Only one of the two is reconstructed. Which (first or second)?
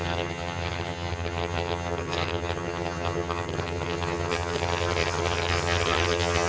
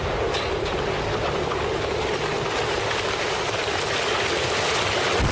first